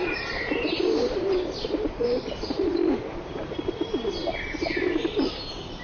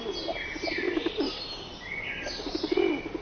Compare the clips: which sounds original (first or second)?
second